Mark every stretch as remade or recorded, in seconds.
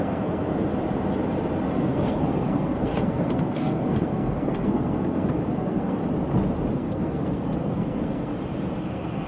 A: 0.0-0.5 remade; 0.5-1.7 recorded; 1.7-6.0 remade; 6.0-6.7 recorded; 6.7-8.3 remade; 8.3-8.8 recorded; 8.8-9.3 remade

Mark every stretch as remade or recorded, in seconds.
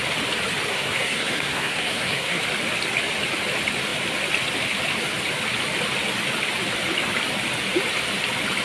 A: 0.0-0.7 recorded; 0.7-2.4 remade; 2.4-8.6 recorded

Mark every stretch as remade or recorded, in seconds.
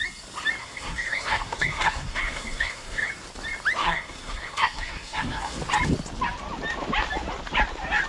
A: 0.0-0.6 recorded; 0.6-3.1 remade; 3.1-3.8 recorded; 3.8-5.6 remade; 5.6-8.1 recorded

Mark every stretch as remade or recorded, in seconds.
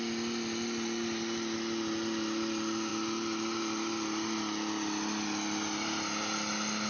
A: 0.0-6.9 recorded